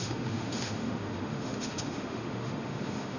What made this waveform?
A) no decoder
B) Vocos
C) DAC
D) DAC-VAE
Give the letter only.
D